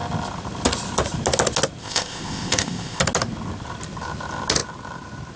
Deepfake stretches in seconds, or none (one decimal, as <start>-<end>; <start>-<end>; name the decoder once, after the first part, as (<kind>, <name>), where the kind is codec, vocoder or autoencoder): 1.8-3.0 (codec, ZipCodec)